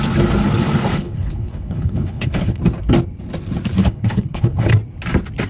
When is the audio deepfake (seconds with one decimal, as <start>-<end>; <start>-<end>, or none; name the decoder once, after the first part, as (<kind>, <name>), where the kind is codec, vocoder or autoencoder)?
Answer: 0.9-2.6 (codec, HILCodec); 3.8-4.7